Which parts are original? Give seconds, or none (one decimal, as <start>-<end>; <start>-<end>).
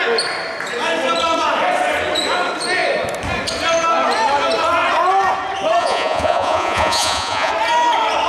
0.0-5.8; 7.5-8.3